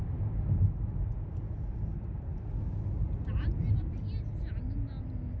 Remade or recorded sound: recorded